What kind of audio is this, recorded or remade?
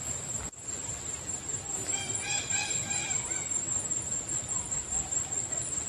recorded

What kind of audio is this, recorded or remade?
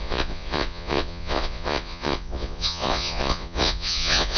remade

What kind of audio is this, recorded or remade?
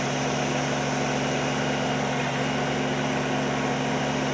recorded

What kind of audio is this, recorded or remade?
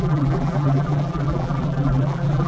remade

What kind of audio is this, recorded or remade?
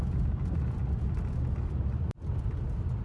recorded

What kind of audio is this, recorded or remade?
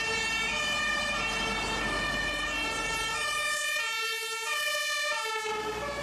recorded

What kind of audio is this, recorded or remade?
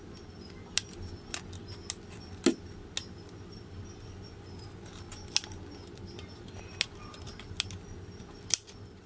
recorded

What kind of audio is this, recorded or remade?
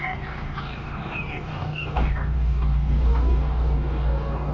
remade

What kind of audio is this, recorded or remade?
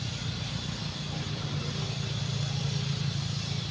recorded